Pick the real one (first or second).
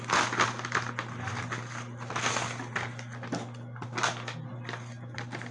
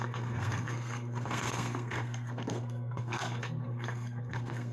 first